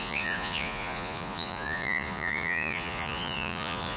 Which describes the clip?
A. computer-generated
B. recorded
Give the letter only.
A